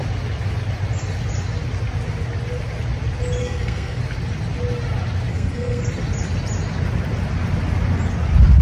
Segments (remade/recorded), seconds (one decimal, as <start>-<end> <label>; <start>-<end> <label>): 0.0-3.4 recorded; 3.4-4.0 remade; 4.0-5.3 recorded; 5.3-5.8 remade; 5.8-8.6 recorded